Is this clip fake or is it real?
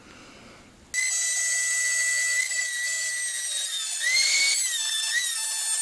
real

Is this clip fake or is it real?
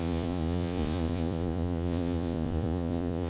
fake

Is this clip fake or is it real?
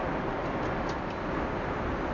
real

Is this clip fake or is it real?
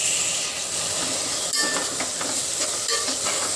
real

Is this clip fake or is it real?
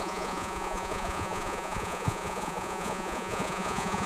fake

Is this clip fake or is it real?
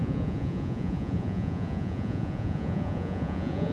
fake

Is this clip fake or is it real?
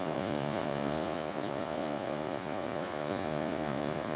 fake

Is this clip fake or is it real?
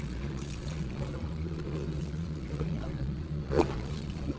fake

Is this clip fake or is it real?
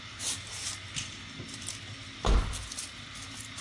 real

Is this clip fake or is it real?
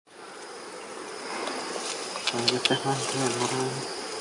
real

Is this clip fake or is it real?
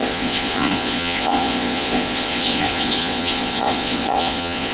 fake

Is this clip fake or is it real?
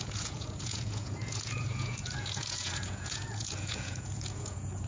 fake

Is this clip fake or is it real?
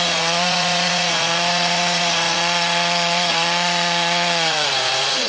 fake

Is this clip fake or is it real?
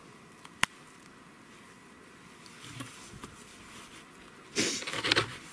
real